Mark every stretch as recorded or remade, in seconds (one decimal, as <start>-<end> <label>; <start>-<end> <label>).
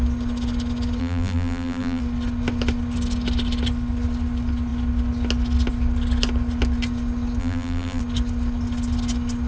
0.0-1.0 recorded; 1.0-2.0 remade; 2.0-7.4 recorded; 7.4-8.0 remade; 8.0-9.5 recorded